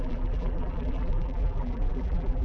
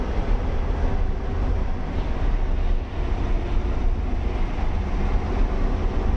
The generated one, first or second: first